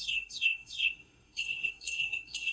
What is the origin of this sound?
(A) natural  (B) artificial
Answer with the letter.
B